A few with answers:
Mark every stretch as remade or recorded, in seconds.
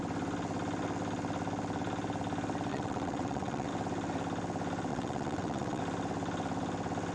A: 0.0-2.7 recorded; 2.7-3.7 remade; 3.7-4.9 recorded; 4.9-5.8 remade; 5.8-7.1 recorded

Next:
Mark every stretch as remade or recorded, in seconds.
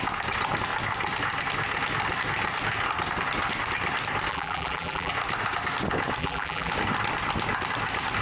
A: 0.0-4.3 recorded; 4.3-5.1 remade; 5.1-6.2 recorded; 6.2-6.7 remade; 6.7-8.2 recorded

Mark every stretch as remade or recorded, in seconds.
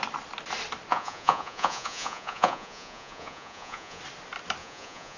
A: 0.0-0.9 recorded; 0.9-4.0 remade; 4.0-4.6 recorded; 4.6-5.2 remade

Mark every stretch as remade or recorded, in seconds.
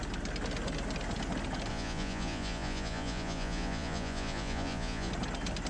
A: 0.0-1.7 recorded; 1.7-5.1 remade; 5.1-5.7 recorded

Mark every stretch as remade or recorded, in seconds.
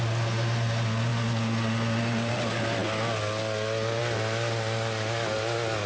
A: 0.0-5.9 recorded